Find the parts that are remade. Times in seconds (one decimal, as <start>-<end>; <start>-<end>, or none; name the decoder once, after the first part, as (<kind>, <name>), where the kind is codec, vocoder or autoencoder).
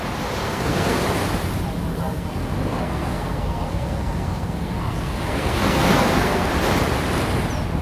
0.4-1.0 (codec, SNAC); 1.9-6.5